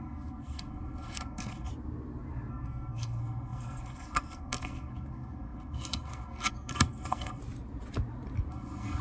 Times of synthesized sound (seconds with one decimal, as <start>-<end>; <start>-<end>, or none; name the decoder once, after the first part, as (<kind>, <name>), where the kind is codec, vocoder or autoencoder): 0.0-1.7 (codec, SNAC); 2.5-7.4; 8.5-9.0